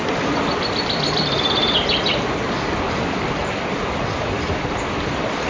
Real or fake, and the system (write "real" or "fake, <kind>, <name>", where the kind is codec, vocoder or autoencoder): real